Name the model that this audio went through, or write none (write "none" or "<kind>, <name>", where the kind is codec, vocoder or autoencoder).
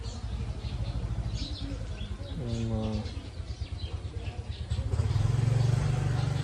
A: none